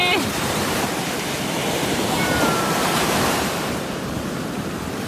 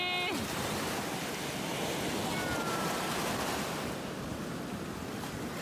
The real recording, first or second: second